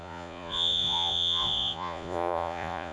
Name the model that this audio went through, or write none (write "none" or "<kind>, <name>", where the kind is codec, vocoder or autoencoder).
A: vocoder, Vocos